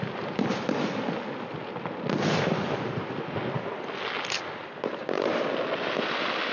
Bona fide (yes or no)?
yes